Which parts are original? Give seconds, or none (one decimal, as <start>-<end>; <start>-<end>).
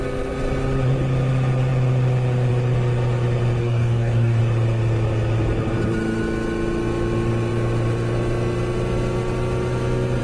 0.0-3.6; 4.4-10.2